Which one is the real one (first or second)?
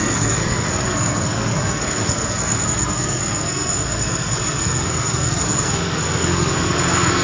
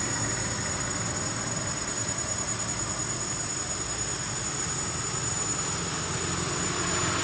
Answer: second